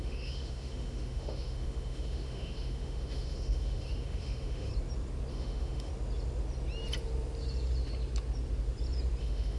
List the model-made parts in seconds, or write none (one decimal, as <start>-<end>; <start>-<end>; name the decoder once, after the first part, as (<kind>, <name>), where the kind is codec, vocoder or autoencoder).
0.0-4.7 (autoencoder, DAC-VAE); 5.3-5.9; 9.2-9.6